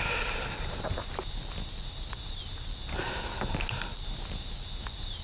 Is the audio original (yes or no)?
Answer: yes